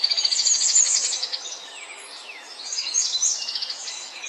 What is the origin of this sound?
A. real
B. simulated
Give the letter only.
B